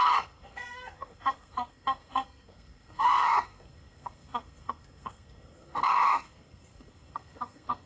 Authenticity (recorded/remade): remade